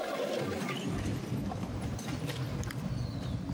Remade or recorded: recorded